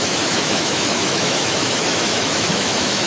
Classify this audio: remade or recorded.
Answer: remade